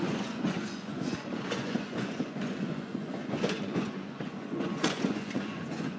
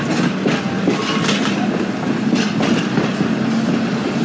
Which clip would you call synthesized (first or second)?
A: first